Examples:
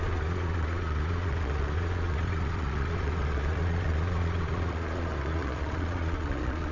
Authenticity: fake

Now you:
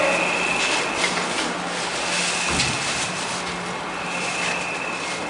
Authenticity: real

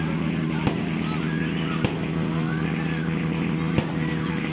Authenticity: real